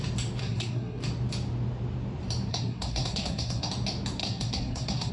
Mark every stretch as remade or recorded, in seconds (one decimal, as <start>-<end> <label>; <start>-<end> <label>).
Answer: 0.0-0.4 recorded; 0.4-1.0 remade; 1.0-2.5 recorded; 2.5-3.7 remade; 3.7-4.2 recorded; 4.2-5.1 remade